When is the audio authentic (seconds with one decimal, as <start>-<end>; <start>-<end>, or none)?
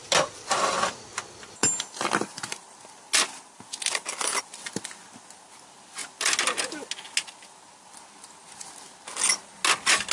0.0-10.1